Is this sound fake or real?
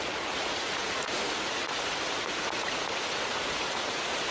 fake